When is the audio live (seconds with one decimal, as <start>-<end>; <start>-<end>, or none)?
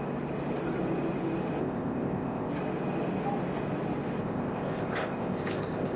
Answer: 0.0-1.6; 2.5-4.2